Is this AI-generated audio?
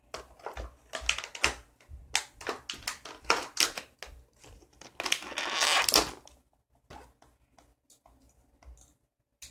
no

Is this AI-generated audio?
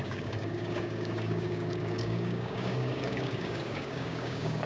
yes